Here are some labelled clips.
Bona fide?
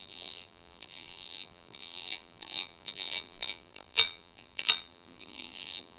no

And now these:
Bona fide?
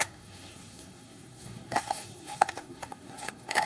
no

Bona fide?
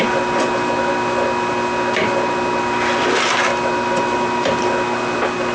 yes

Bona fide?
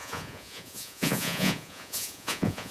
no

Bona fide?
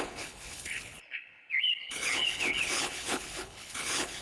no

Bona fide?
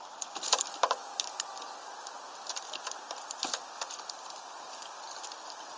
yes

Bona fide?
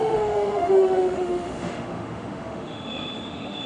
no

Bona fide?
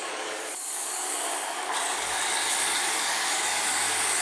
no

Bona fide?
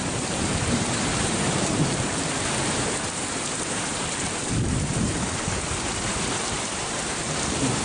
no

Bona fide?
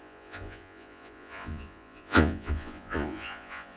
no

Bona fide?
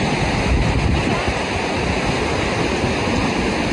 yes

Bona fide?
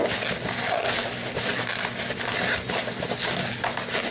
yes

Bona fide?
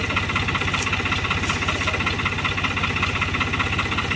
yes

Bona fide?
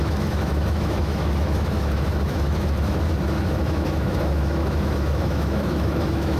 no